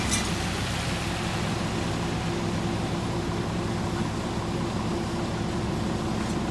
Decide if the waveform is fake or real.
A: real